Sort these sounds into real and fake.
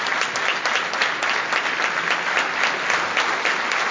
real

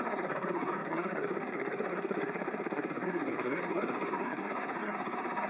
fake